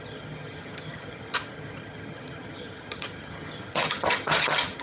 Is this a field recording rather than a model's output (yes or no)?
no